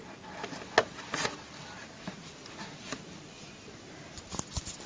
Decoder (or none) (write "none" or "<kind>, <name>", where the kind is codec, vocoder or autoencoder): none